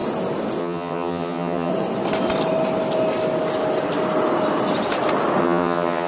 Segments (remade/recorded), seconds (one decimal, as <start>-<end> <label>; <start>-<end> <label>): 0.0-0.6 recorded; 0.6-1.7 remade; 1.7-5.4 recorded; 5.4-6.1 remade